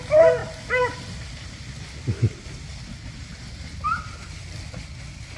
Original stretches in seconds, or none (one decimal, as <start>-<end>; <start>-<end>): 0.0-5.4